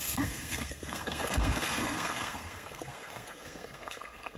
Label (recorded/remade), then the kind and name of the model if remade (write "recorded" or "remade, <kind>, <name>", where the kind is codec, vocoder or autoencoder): remade, codec, SNAC